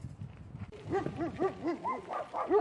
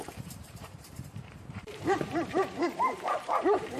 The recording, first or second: first